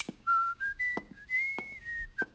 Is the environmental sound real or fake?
fake